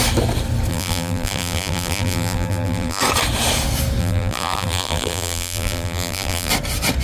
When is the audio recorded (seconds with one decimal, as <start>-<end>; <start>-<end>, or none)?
0.0-0.7; 3.0-4.0; 6.5-7.0